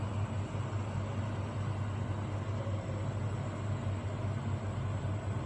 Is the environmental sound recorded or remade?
recorded